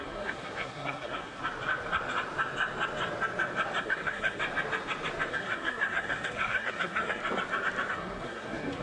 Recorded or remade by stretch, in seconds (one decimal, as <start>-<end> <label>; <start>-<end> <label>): 0.0-1.4 remade; 1.4-3.8 recorded; 3.8-4.4 remade; 4.4-5.3 recorded; 5.3-7.2 remade; 7.2-7.9 recorded; 7.9-8.8 remade